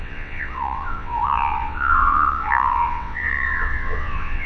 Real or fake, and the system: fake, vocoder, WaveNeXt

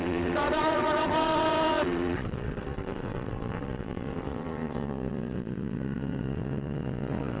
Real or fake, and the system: fake, vocoder, WaveNeXt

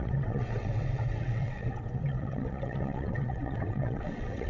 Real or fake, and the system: fake, vocoder, WaveNeXt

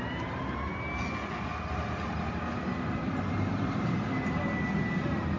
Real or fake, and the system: real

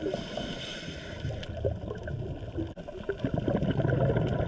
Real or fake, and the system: real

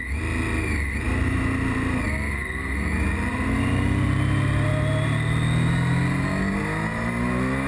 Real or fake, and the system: real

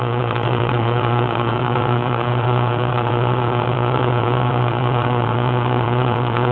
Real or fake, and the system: fake, vocoder, WaveNeXt